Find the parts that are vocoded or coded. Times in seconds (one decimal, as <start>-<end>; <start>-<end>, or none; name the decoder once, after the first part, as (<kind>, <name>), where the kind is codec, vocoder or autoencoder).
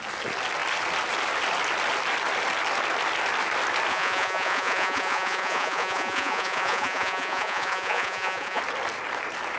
3.9-8.6 (vocoder, Vocos)